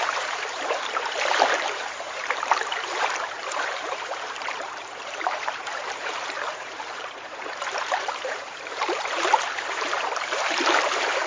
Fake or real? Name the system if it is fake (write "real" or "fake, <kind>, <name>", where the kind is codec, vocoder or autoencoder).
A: fake, vocoder, BigVGAN v2